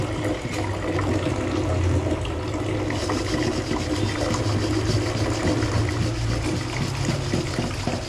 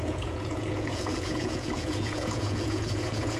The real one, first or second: first